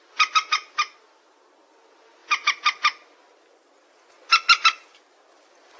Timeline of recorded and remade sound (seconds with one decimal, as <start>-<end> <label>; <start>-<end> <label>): 0.0-5.8 recorded